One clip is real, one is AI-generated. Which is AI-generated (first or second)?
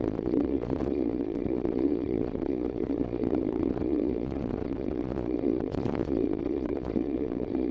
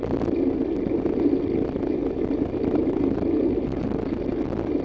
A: first